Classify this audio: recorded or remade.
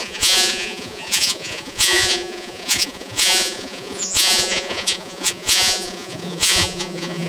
remade